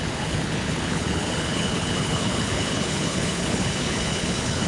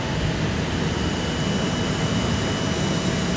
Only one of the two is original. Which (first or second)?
second